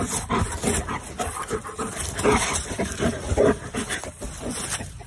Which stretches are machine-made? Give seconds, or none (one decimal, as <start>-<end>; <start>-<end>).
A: none

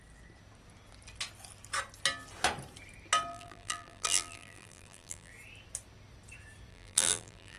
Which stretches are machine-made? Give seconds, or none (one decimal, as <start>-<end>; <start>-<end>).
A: 3.3-5.3; 6.7-7.6

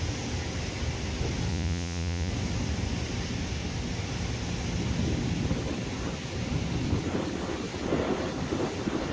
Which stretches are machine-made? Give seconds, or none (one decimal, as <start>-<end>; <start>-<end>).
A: 1.5-2.3

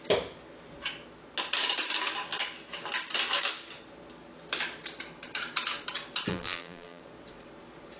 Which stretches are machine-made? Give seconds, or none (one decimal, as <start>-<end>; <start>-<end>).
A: 6.3-7.0

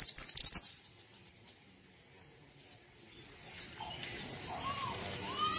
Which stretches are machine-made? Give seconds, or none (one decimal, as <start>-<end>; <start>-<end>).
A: none

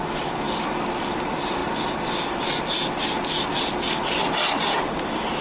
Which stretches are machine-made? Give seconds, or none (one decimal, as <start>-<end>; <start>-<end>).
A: 0.0-1.6; 4.8-5.4

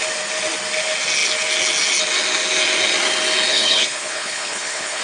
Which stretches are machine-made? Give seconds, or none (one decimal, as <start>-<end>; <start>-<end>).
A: 3.5-5.0

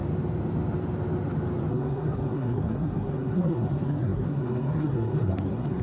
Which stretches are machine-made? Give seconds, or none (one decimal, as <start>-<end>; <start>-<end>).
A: 1.7-5.8